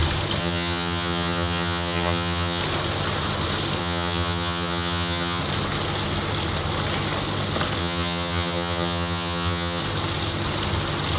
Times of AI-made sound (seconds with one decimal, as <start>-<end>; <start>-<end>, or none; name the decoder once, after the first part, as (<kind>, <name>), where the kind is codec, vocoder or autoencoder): 0.4-2.6 (vocoder, HiFi-GAN); 3.8-5.4; 7.8-9.8